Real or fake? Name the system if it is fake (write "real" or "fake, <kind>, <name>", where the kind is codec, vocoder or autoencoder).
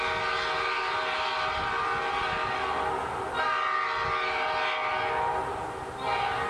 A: real